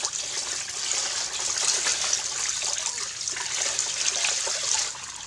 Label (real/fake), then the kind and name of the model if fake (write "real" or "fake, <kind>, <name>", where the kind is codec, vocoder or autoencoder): real